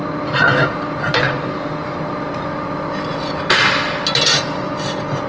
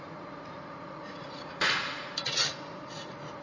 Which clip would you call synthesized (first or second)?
second